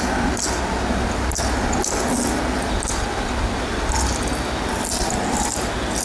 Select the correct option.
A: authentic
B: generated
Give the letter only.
A